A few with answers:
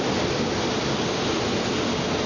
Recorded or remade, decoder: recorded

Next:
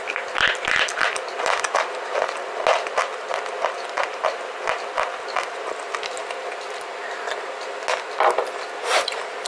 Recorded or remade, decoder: recorded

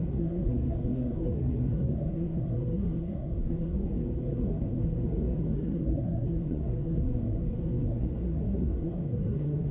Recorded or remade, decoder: remade, codec, SNAC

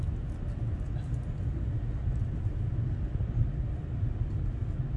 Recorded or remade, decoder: recorded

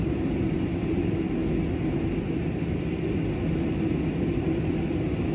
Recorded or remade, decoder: recorded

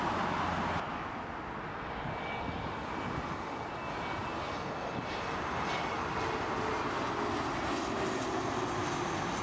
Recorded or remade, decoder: recorded